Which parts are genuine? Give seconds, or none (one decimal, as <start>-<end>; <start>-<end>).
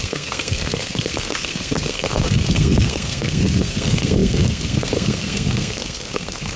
none